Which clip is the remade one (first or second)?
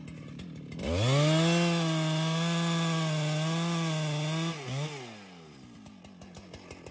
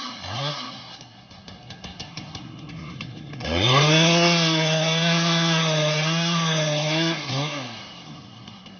second